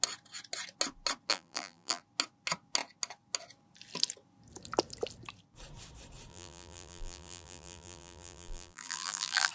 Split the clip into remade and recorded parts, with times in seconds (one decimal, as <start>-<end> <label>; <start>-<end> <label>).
0.0-1.3 recorded; 1.3-2.0 remade; 2.0-6.3 recorded; 6.3-9.5 remade